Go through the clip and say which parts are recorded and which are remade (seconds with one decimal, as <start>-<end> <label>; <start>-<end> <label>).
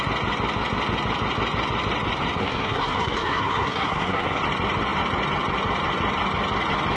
0.0-2.4 recorded; 2.4-4.4 remade; 4.4-7.0 recorded